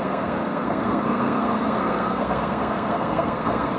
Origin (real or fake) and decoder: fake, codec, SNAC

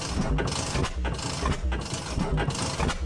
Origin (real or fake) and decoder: real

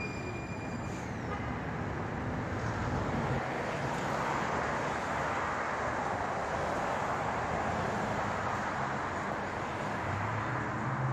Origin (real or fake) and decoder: real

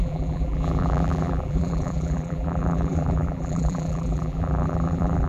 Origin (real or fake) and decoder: fake, vocoder, BigVGAN v2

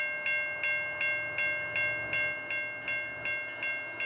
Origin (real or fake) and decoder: real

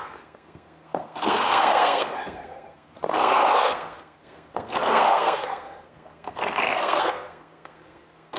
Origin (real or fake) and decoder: fake, codec, SNAC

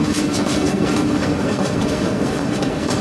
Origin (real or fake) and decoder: fake, codec, SNAC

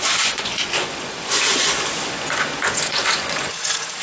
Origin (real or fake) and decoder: fake, vocoder, Vocos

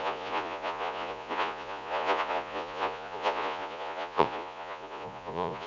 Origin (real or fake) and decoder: fake, vocoder, Vocos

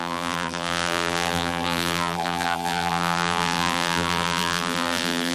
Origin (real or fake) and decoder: fake, vocoder, BigVGAN v2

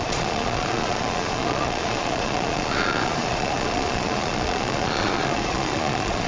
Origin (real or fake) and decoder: fake, vocoder, Vocos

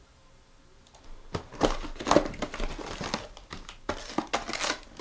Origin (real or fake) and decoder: real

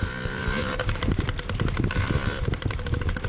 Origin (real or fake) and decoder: fake, vocoder, BigVGAN v2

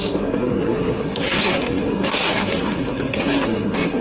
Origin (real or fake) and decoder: fake, codec, SNAC